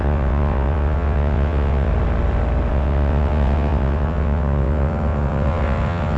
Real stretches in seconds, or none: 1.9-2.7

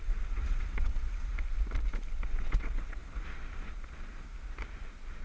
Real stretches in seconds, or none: 1.3-2.4; 3.0-5.2

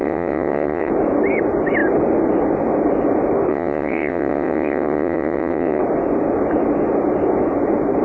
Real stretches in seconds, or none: 0.9-3.5; 5.8-8.0

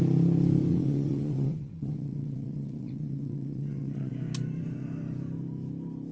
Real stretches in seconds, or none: 0.0-0.7; 4.1-6.1

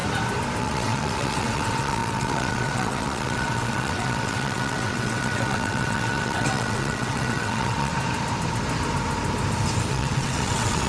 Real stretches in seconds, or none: 0.0-0.6; 7.9-9.9